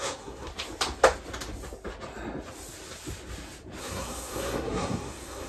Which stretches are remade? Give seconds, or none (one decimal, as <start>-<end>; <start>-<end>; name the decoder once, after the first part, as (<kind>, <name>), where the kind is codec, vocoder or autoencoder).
0.0-0.5 (codec, SNAC); 3.8-5.5